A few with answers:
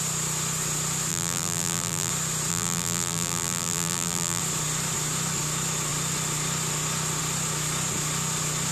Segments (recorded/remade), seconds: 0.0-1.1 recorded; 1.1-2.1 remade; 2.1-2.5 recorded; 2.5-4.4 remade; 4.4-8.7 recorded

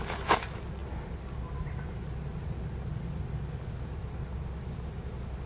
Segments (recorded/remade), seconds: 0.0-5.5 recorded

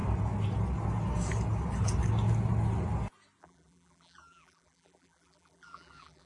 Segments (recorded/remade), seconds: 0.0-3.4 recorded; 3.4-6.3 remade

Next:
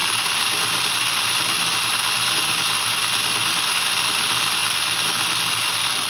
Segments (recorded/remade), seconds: 0.0-6.1 recorded

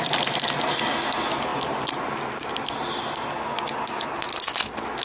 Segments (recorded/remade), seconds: 0.0-1.5 recorded; 1.5-2.5 remade; 2.5-5.0 recorded